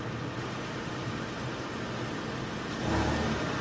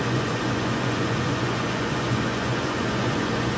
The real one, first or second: first